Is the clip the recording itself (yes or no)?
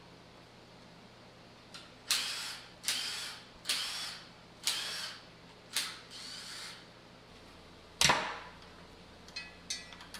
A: yes